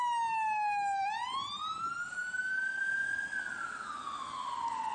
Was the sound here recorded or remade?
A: recorded